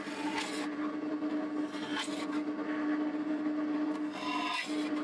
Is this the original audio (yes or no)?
yes